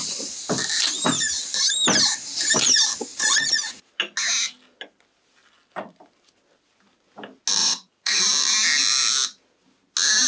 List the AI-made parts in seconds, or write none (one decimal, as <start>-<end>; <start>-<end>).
3.1-3.9; 7.6-8.2